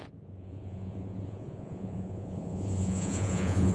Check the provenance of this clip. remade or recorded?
remade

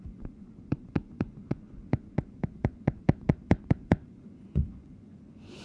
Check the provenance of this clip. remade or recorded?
remade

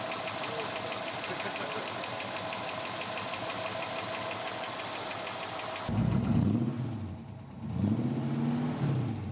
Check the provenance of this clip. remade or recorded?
recorded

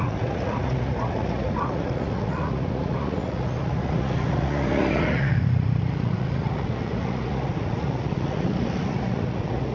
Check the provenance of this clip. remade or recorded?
remade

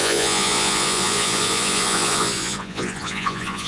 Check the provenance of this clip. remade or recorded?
remade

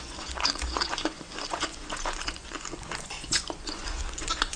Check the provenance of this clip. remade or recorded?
remade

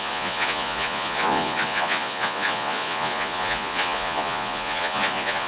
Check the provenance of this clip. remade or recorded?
remade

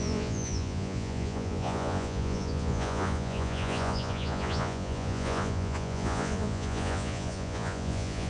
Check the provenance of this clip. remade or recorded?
remade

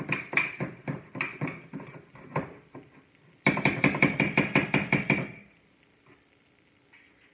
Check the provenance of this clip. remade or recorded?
recorded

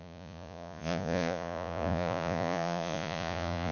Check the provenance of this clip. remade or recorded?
remade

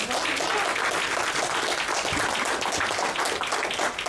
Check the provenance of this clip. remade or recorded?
recorded